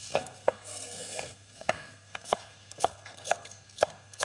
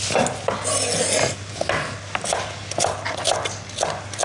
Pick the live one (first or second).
second